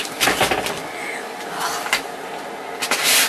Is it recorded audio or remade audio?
recorded